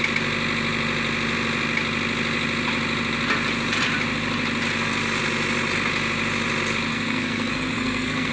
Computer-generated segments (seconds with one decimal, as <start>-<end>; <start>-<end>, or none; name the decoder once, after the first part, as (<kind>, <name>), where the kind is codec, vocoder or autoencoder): 6.9-8.3 (codec, SNAC)